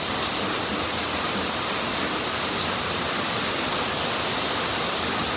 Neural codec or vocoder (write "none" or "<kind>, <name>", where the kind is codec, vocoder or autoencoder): none